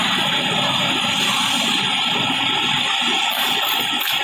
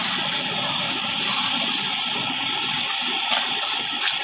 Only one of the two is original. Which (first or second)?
first